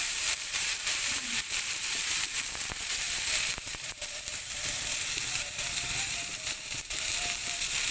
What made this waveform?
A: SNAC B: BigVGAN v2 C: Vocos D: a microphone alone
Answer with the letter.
B